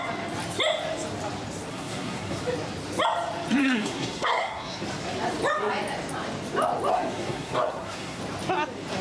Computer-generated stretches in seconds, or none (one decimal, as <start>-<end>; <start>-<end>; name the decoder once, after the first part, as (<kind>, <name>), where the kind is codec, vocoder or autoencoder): 1.7-2.4 (codec, SNAC); 3.6-4.8; 6.9-8.2